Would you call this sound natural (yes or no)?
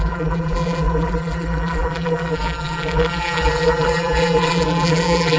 no